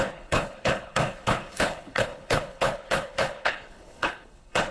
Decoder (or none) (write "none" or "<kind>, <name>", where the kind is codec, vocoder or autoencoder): codec, HILCodec